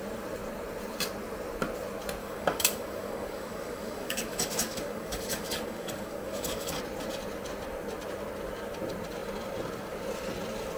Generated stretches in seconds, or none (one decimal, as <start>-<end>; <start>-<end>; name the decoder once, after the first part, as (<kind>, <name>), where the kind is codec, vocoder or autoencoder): 2.2-6.8 (codec, DAC)